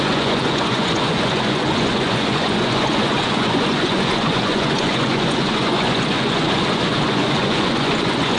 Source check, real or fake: fake